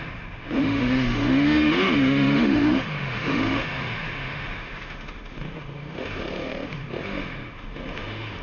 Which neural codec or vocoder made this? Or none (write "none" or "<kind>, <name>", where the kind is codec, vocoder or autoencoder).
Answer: autoencoder, DAC-VAE